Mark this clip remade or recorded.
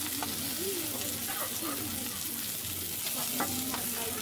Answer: recorded